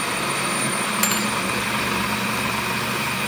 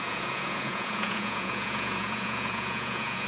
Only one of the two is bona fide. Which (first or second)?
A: first